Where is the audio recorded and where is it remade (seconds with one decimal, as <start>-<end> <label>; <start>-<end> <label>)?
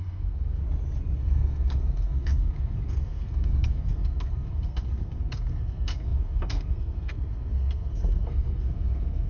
0.0-0.6 remade; 0.6-1.2 recorded; 1.2-9.3 remade